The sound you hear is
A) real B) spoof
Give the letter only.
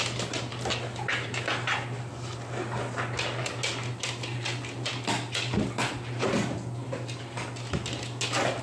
A